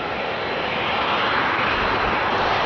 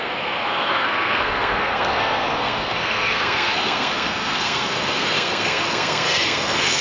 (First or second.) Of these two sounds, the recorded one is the first